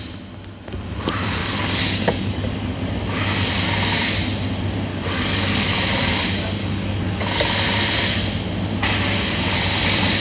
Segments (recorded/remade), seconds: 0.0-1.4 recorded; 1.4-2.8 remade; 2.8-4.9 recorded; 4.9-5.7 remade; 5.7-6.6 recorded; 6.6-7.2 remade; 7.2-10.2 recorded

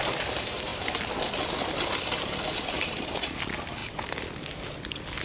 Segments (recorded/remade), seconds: 0.0-5.2 recorded

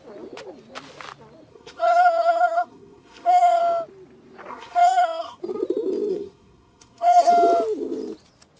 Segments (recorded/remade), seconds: 0.0-1.5 recorded; 1.5-3.6 remade; 3.6-4.5 recorded; 4.5-5.4 remade; 5.4-6.1 recorded; 6.1-7.3 remade; 7.3-8.6 recorded

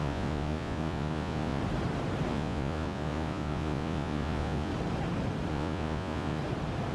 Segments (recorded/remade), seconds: 0.0-1.6 remade; 1.6-2.3 recorded; 2.3-4.7 remade; 4.7-5.5 recorded; 5.5-6.4 remade; 6.4-6.9 recorded

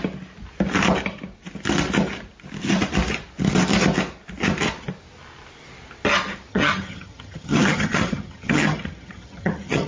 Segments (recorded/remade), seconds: 0.0-6.5 recorded; 6.5-9.9 remade

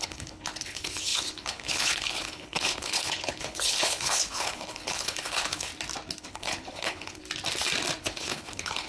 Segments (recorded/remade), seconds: 0.0-5.7 remade; 5.7-6.2 recorded; 6.2-7.2 remade; 7.2-8.0 recorded; 8.0-8.9 remade